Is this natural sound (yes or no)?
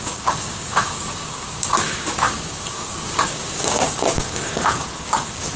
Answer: no